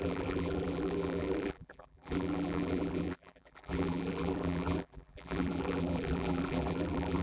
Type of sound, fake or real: fake